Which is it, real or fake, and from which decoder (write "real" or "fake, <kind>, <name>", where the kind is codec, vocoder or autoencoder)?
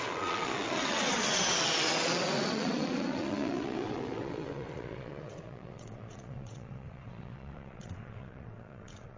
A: fake, vocoder, WaveNeXt